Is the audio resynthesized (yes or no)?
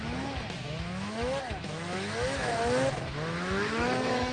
yes